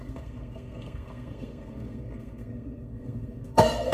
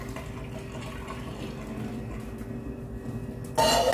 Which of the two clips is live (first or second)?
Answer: second